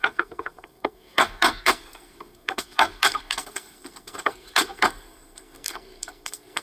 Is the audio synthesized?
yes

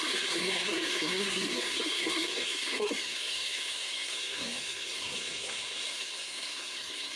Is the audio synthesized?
yes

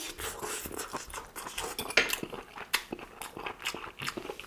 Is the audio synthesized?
no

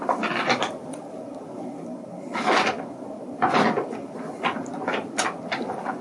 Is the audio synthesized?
no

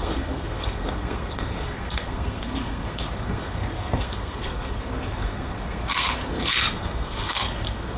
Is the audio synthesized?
yes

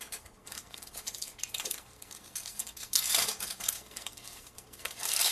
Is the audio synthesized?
yes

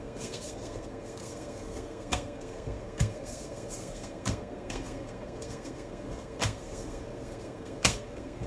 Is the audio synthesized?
yes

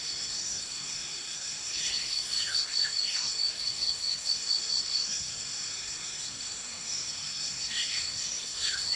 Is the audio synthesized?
yes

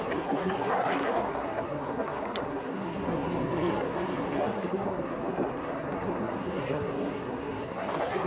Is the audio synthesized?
yes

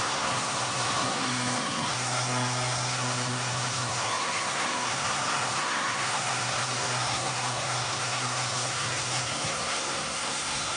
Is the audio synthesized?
yes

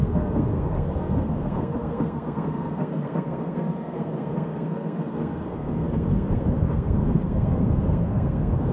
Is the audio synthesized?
yes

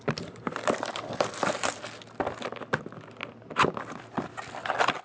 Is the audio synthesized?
no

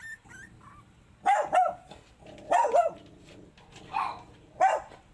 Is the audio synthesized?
no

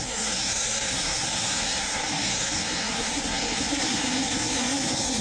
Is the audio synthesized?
yes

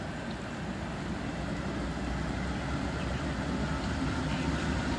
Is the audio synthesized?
no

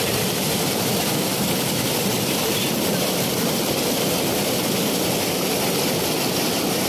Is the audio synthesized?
no